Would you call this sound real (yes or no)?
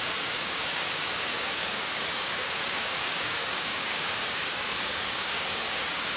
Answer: no